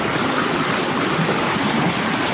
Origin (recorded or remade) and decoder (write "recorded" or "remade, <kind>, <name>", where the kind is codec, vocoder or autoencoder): remade, vocoder, BigVGAN v2